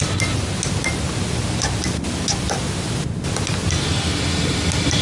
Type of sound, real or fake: real